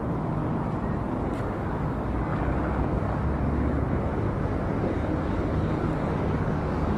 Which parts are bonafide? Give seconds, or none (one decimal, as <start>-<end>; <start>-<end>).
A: 0.4-1.0